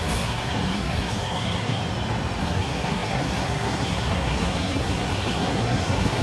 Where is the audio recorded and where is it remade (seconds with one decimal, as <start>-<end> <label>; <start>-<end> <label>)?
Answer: 0.0-1.8 remade; 1.8-2.4 recorded; 2.4-6.2 remade